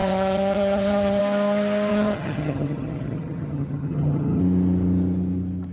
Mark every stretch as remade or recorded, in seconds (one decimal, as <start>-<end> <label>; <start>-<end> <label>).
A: 0.0-1.2 remade; 1.2-1.9 recorded; 1.9-4.4 remade; 4.4-5.7 recorded

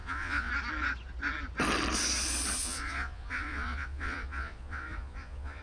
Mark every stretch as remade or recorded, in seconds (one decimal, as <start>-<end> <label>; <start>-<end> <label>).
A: 0.0-0.5 remade; 0.5-2.6 recorded; 2.6-5.6 remade

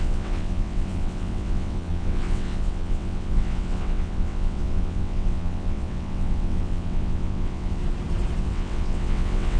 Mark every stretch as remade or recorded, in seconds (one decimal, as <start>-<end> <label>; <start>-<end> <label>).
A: 0.0-7.8 remade; 7.8-8.4 recorded; 8.4-9.6 remade

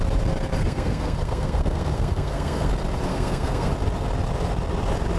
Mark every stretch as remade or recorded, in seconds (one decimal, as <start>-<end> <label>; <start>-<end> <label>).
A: 0.0-0.6 recorded; 0.6-2.7 remade; 2.7-3.1 recorded; 3.1-3.7 remade; 3.7-5.2 recorded

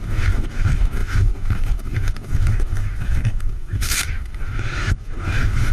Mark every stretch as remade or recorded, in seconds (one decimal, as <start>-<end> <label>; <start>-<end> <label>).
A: 0.0-5.7 remade

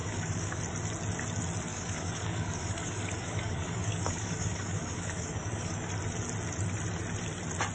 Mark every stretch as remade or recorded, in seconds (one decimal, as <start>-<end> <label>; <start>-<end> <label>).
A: 0.0-0.6 remade; 0.6-1.7 recorded; 1.7-5.9 remade; 5.9-7.7 recorded

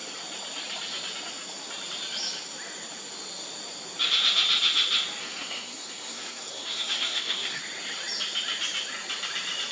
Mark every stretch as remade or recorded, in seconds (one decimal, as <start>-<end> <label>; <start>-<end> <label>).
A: 0.0-5.2 recorded; 5.2-7.6 remade; 7.6-9.7 recorded